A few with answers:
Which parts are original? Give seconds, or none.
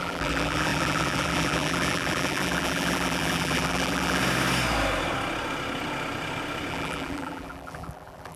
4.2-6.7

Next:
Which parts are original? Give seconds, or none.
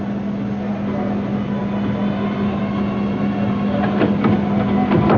0.0-5.2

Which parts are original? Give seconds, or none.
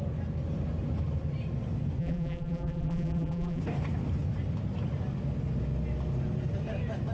0.0-2.0; 3.6-7.1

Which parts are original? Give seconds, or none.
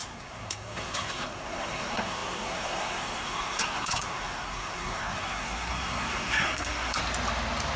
7.0-7.8